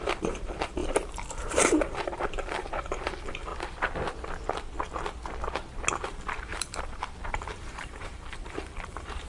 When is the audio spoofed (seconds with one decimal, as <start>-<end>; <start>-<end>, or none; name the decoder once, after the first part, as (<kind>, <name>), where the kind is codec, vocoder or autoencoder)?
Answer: 0.0-3.5 (vocoder, BigVGAN v2); 5.9-9.3

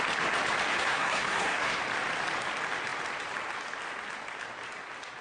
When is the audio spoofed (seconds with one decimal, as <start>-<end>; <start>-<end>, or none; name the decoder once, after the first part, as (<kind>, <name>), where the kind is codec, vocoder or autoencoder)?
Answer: 0.7-1.8 (codec, SNAC)

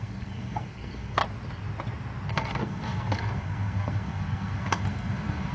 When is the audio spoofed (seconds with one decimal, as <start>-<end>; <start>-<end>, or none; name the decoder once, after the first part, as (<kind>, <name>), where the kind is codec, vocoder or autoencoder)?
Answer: 0.0-1.2 (codec, SNAC); 2.3-5.5

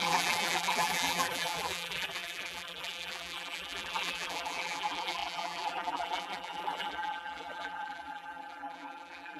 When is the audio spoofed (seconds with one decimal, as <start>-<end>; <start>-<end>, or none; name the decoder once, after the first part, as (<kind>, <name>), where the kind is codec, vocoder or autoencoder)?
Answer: 0.0-9.4 (vocoder, BigVGAN v2)